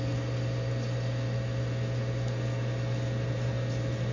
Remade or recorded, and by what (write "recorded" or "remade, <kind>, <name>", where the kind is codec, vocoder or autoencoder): recorded